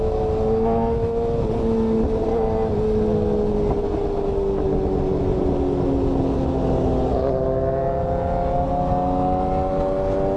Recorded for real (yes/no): yes